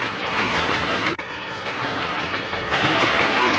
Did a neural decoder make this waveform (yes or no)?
yes